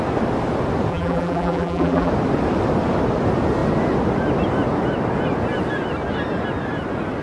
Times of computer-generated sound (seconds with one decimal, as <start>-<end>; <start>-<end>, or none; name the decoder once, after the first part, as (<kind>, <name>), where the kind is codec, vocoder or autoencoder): 0.9-2.1 (vocoder, BigVGAN v2)